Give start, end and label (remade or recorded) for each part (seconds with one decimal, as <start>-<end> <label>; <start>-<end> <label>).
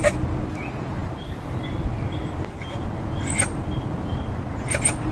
0.0-5.1 recorded